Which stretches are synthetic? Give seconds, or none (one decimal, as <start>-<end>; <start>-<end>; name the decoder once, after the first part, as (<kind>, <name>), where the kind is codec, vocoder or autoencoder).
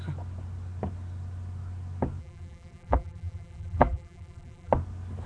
2.2-4.7 (vocoder, BigVGAN v2)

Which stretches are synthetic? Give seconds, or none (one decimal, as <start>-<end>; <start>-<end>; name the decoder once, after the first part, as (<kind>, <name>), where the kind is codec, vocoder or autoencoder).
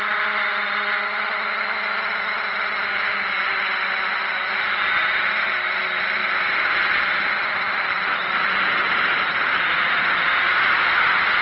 none